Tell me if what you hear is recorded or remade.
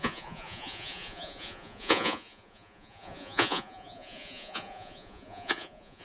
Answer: remade